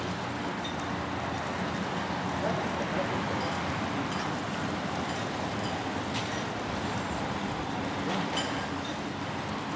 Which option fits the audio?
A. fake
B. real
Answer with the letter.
B